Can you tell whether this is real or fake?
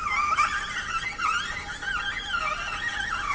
real